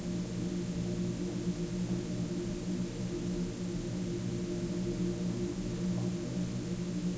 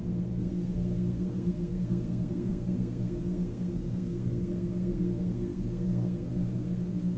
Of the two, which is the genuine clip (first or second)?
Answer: first